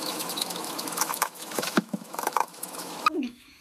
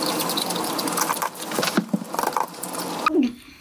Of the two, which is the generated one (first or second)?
first